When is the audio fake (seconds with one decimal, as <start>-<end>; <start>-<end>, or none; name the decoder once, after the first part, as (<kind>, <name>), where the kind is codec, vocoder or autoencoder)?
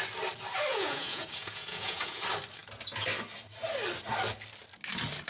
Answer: 0.7-2.2 (vocoder, Vocos)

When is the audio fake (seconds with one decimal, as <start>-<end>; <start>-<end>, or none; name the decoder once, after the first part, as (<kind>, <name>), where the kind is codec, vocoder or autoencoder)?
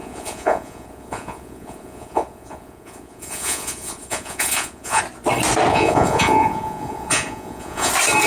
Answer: 0.0-5.0 (vocoder, Vocos); 5.7-7.9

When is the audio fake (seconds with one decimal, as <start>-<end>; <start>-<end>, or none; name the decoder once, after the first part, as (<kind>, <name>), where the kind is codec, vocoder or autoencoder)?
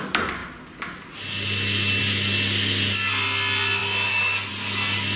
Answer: none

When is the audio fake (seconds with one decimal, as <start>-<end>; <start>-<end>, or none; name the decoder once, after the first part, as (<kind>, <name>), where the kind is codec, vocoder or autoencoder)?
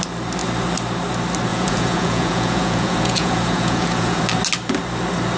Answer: 1.5-4.2 (vocoder, Vocos)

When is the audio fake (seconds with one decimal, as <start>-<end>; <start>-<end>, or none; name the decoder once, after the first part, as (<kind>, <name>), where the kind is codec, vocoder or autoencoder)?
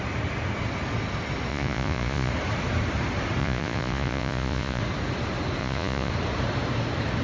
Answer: 1.5-2.3 (vocoder, Vocos); 3.4-4.8; 5.6-6.1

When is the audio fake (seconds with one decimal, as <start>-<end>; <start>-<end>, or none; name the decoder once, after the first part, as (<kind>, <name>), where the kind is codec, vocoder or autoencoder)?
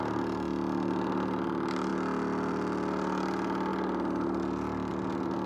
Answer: none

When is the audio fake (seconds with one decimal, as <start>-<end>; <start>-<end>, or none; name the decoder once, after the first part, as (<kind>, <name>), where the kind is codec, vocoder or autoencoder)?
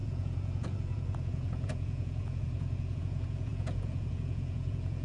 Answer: 0.0-5.0 (vocoder, Vocos)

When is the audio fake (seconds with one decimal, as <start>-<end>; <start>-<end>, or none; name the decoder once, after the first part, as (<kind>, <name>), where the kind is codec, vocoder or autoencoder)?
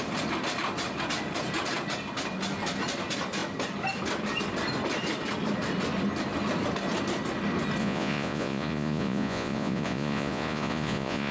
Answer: 7.8-11.3 (vocoder, Vocos)